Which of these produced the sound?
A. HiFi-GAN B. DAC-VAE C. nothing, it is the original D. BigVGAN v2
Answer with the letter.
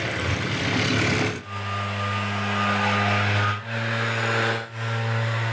C